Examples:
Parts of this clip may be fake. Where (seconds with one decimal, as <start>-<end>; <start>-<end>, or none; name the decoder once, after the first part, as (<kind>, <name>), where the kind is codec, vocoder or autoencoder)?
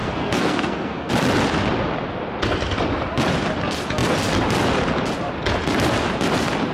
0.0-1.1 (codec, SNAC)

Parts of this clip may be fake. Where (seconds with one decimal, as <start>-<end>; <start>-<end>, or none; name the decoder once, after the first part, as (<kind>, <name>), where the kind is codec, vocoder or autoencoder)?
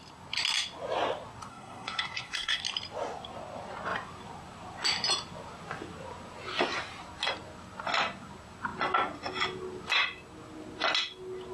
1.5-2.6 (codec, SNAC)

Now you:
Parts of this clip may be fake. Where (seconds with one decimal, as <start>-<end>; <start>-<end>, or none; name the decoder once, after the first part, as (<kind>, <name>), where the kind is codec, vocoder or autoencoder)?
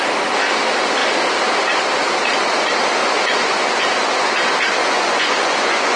3.0-3.8 (vocoder, Vocos); 4.8-6.0